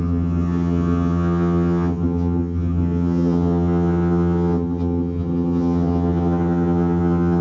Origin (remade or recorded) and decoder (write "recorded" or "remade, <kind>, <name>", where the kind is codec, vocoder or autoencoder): remade, vocoder, HiFi-GAN